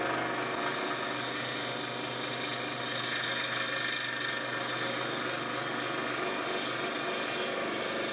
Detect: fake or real real